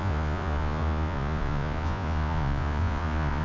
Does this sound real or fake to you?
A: fake